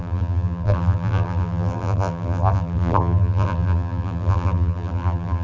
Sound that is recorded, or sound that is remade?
remade